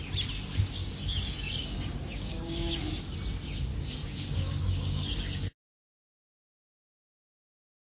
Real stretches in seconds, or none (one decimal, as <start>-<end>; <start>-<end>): 0.0-0.8; 3.1-3.7; 5.9-7.9